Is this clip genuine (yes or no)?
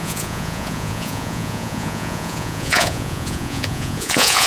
no